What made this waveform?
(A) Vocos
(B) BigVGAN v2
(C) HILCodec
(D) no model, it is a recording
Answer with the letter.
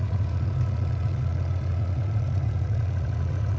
A